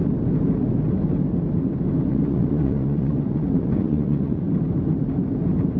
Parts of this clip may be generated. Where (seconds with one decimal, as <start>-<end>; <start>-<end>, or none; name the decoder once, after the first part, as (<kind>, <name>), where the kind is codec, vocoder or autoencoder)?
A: 2.1-4.4 (vocoder, Vocos)